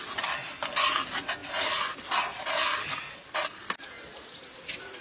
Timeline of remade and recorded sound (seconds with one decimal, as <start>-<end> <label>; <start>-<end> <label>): 0.0-5.0 recorded